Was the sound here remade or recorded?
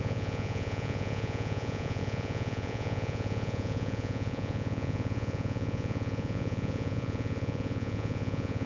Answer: remade